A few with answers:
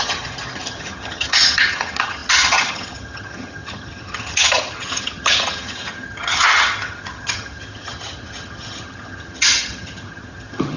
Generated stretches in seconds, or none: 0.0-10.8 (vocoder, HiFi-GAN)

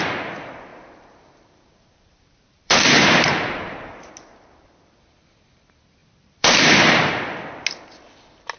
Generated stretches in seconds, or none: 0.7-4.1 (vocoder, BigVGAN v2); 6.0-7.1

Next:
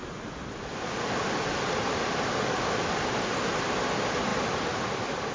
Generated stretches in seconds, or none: none

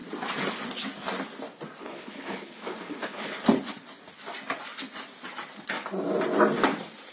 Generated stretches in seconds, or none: 1.8-3.4 (codec, HILCodec)

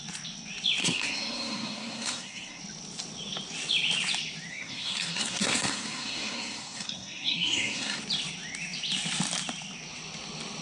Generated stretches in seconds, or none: 0.8-2.6 (codec, SNAC); 4.5-8.0